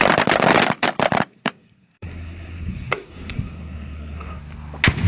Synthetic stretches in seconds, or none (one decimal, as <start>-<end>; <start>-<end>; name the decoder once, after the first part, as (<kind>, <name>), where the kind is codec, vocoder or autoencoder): 1.3-4.4 (codec, SNAC)